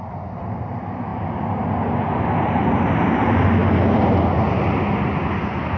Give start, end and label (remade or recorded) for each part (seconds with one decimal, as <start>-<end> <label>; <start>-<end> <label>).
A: 0.0-5.8 recorded